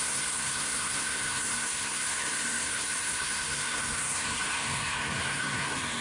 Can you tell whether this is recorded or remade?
remade